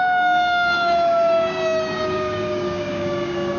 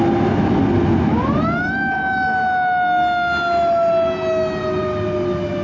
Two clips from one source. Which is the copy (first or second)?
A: first